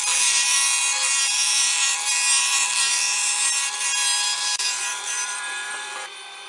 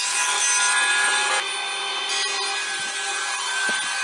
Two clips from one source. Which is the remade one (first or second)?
first